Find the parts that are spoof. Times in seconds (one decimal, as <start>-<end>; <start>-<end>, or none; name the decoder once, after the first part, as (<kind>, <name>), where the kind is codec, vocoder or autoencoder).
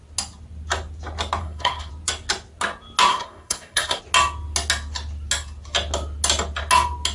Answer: 1.4-1.9 (codec, SNAC); 3.1-4.0